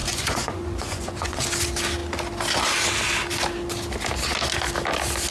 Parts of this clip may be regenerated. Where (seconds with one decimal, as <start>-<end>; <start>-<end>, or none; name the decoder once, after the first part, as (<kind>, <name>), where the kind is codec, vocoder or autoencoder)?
0.0-1.4 (vocoder, Vocos)